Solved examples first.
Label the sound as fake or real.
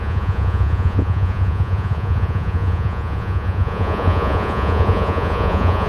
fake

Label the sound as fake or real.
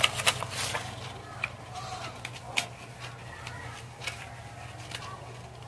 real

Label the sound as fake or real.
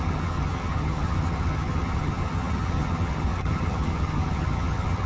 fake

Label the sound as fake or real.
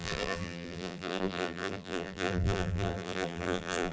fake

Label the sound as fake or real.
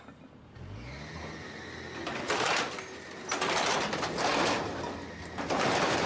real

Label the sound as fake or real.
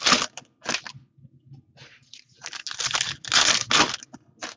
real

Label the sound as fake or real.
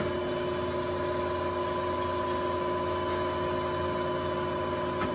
real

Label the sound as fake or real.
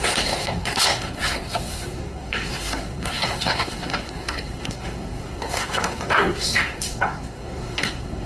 fake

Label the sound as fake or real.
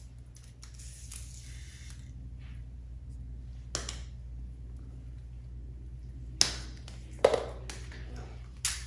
real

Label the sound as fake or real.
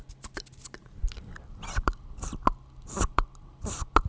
real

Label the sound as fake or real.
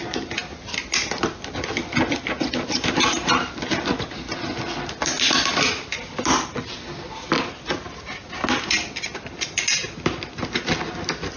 real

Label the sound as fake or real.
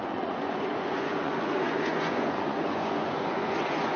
fake